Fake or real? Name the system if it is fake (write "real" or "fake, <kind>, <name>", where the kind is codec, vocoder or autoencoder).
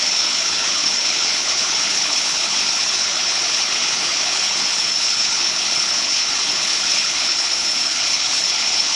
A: fake, codec, HILCodec